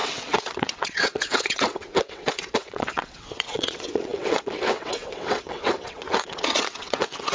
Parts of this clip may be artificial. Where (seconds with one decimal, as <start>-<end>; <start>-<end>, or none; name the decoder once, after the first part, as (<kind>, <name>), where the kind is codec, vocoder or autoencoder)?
0.0-7.3 (vocoder, WaveNeXt)